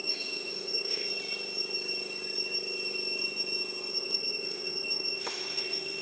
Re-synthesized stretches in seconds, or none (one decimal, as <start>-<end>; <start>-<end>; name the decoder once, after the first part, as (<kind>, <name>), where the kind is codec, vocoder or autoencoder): 0.0-1.1 (autoencoder, DAC-VAE); 3.9-6.0

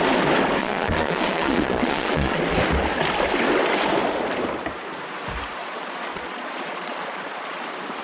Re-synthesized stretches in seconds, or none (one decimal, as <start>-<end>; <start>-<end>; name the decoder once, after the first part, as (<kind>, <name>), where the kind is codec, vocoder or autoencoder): 0.6-2.4 (vocoder, Vocos); 5.6-7.6

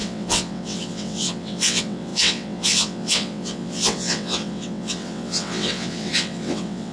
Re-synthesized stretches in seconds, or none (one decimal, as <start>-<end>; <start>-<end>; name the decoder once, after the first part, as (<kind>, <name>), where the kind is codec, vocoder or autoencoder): 0.0-6.9 (vocoder, WaveNeXt)

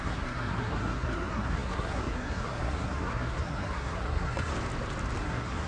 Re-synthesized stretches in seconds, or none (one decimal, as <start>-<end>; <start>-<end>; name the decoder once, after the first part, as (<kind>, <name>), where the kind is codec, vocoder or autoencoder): 0.0-4.5 (codec, SNAC); 5.2-5.7

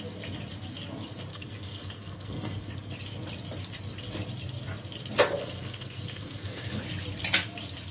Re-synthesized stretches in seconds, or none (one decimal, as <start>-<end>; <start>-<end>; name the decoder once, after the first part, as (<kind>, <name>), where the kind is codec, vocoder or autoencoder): 1.3-2.7 (codec, SNAC); 5.4-6.8

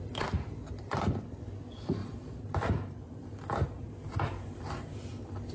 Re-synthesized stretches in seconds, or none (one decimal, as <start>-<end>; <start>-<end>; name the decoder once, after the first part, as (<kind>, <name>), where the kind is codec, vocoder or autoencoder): 2.0-5.5 (vocoder, BigVGAN v2)